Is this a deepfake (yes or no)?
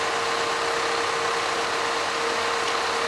no